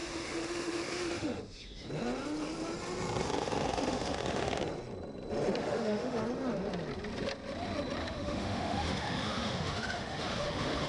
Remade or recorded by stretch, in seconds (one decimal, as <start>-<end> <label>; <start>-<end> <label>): 0.0-1.9 remade; 1.9-3.2 recorded; 3.2-4.6 remade; 4.6-5.6 recorded; 5.6-6.2 remade; 6.2-8.0 recorded; 8.0-10.9 remade

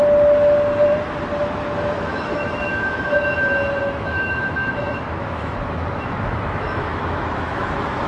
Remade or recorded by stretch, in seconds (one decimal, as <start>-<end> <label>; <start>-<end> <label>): 0.0-1.4 recorded; 1.4-3.1 remade; 3.1-3.8 recorded; 3.8-8.1 remade

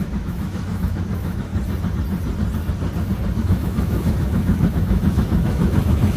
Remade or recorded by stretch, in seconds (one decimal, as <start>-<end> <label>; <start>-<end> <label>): 0.0-1.5 remade; 1.5-3.4 recorded; 3.4-6.2 remade

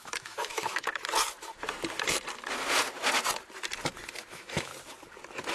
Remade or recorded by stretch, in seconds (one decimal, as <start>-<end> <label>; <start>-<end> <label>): 0.0-1.0 remade; 1.0-4.3 recorded; 4.3-4.7 remade; 4.7-5.5 recorded

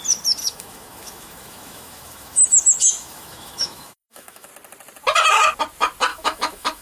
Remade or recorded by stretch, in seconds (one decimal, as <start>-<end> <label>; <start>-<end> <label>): 0.0-0.4 recorded; 0.4-4.5 remade; 4.5-6.1 recorded; 6.1-6.8 remade

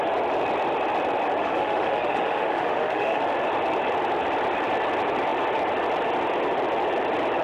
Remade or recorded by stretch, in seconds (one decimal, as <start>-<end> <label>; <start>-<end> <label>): 0.0-1.4 recorded; 1.4-3.2 remade; 3.2-7.4 recorded